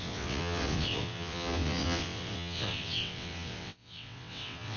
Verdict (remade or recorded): remade